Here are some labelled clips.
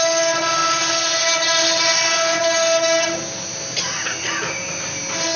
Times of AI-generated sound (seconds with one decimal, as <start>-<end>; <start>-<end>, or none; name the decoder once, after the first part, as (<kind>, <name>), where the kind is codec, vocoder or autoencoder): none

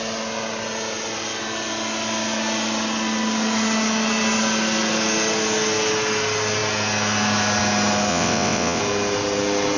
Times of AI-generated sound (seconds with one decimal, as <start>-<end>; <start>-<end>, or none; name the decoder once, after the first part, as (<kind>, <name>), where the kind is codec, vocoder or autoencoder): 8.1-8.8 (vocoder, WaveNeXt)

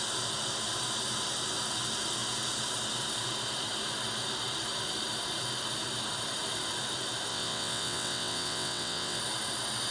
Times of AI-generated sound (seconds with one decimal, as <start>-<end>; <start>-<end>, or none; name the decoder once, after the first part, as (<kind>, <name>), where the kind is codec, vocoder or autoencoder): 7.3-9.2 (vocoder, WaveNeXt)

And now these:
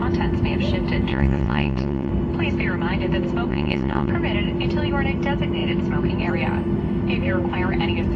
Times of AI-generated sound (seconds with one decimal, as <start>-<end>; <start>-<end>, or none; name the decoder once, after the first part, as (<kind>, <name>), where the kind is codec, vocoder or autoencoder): 1.1-2.1 (vocoder, WaveNeXt); 3.5-4.1

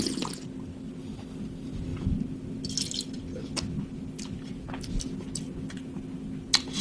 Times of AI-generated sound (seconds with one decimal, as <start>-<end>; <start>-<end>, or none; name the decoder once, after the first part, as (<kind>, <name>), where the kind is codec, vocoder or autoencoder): none

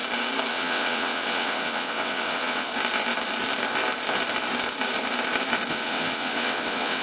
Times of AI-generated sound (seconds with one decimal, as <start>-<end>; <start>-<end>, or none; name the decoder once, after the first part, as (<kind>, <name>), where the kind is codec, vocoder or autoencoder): 0.5-2.7 (vocoder, WaveNeXt); 5.7-7.0

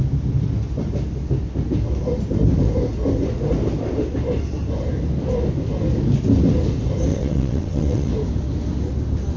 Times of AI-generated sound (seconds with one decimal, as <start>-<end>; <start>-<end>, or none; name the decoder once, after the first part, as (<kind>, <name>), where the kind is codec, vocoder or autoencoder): 7.1-8.1 (vocoder, WaveNeXt)